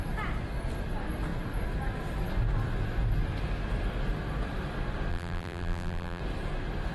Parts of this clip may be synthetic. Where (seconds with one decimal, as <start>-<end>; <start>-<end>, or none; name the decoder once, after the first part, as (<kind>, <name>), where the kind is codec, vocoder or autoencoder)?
5.1-6.2 (vocoder, BigVGAN v2)